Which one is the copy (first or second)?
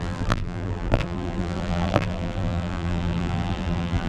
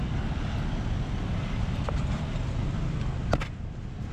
first